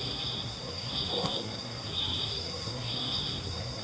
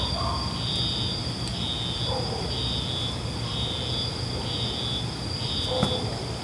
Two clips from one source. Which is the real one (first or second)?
second